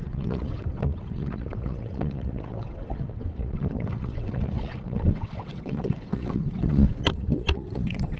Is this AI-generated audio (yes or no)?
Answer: yes